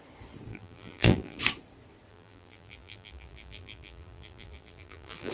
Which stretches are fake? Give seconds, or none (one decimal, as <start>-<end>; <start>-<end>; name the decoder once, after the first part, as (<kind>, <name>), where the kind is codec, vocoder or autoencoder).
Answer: 0.5-1.4 (vocoder, BigVGAN v2); 2.1-5.3

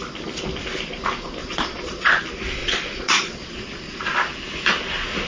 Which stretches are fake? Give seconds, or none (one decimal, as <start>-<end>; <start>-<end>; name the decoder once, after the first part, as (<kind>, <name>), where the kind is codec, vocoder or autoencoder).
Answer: 1.4-2.2 (vocoder, Vocos); 2.6-4.0